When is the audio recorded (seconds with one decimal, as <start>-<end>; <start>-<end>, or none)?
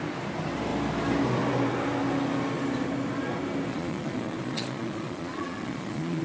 0.0-3.7